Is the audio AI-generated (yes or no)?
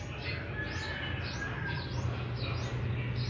no